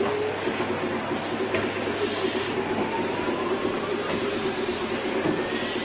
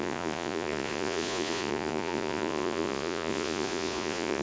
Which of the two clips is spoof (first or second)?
second